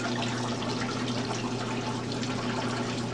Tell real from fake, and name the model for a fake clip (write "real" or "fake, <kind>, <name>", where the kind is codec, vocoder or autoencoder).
real